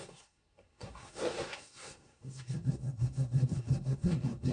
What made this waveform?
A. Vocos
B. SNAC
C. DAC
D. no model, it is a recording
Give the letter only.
B